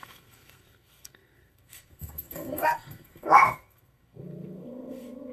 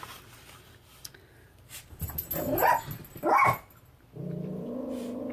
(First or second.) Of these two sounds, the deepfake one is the first